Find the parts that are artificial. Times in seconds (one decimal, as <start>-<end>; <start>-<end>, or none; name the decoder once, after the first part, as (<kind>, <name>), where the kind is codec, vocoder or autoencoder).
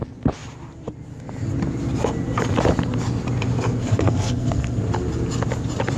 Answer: 3.8-4.8 (codec, SNAC)